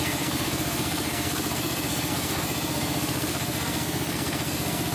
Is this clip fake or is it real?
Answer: fake